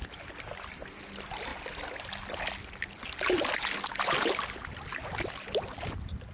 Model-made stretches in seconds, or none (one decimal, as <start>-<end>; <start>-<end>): none